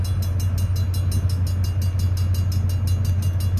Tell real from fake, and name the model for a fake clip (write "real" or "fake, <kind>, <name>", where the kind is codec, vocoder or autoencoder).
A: real